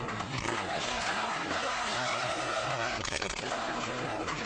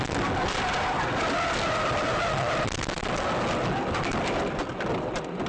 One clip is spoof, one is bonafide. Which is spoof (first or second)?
first